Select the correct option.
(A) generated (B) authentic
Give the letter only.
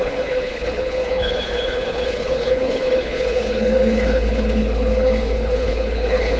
A